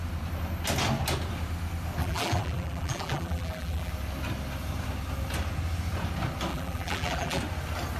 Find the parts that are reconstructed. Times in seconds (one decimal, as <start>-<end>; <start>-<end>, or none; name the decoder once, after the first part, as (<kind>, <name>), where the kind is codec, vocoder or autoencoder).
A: 2.0-3.9 (vocoder, BigVGAN v2); 6.5-7.4